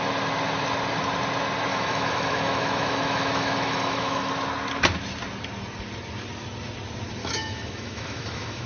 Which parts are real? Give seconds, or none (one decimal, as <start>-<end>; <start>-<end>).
0.0-1.7; 4.3-7.2